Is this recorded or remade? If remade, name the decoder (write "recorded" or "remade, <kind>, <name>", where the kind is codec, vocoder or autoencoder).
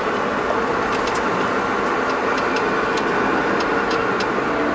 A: recorded